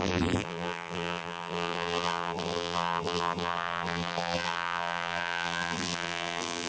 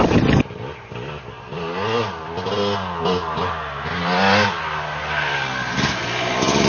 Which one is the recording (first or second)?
second